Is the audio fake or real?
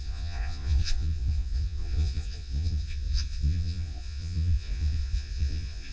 fake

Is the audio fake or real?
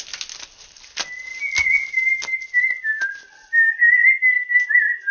real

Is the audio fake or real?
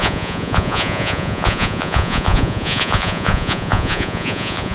fake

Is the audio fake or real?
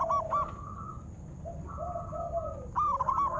real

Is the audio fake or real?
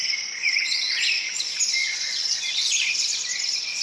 fake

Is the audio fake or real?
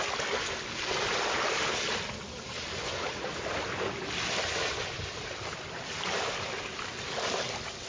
real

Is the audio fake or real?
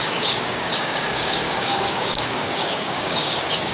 fake